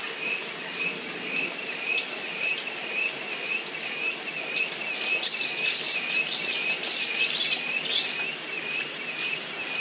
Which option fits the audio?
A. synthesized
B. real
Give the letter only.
B